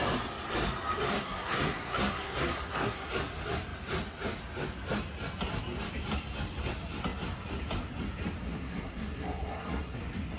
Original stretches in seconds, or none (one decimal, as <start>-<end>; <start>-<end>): 0.0-1.1; 3.1-8.4; 10.0-10.4